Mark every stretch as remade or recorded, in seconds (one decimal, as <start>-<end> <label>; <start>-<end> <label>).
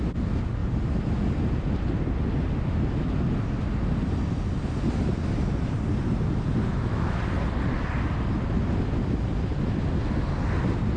0.0-6.7 recorded; 6.7-7.2 remade; 7.2-11.0 recorded